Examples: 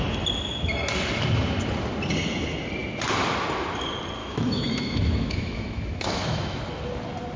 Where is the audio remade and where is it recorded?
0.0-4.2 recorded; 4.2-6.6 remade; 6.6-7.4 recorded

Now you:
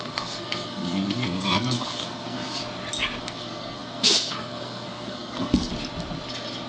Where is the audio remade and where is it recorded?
0.0-2.6 remade; 2.6-3.2 recorded; 3.2-5.7 remade; 5.7-6.7 recorded

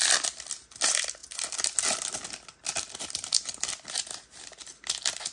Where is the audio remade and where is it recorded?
0.0-5.3 recorded

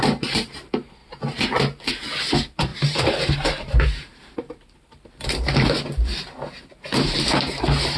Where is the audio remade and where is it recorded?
0.0-1.0 remade; 1.0-2.2 recorded; 2.2-8.0 remade

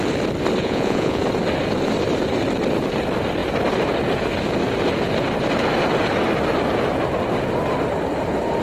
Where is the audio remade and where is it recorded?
0.0-0.6 recorded; 0.6-1.2 remade; 1.2-8.6 recorded

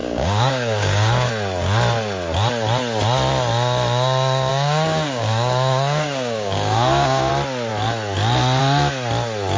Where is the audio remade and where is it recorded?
0.0-1.3 remade; 1.3-4.5 recorded; 4.5-7.3 remade; 7.3-9.6 recorded

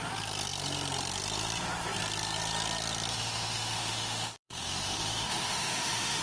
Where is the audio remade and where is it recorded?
0.0-3.1 recorded; 3.1-6.2 remade